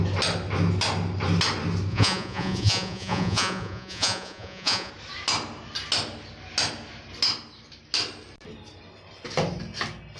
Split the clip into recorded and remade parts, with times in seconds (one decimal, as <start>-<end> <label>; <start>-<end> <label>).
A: 0.0-1.9 recorded; 1.9-4.9 remade; 4.9-10.2 recorded